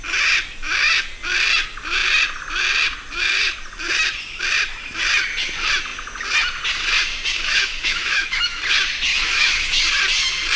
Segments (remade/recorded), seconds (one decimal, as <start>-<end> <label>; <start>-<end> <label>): 0.0-7.3 recorded; 7.3-8.6 remade; 8.6-9.1 recorded; 9.1-9.8 remade; 9.8-10.6 recorded

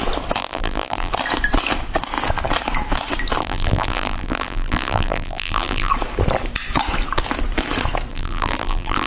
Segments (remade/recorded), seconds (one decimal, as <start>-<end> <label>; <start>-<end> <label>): 0.0-0.4 recorded; 0.4-1.1 remade; 1.1-3.4 recorded; 3.4-5.9 remade; 5.9-8.1 recorded; 8.1-9.1 remade